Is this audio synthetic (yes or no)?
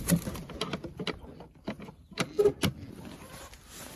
no